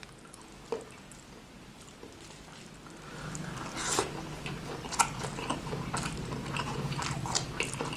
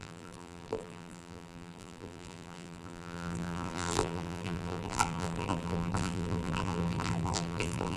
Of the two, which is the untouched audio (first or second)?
first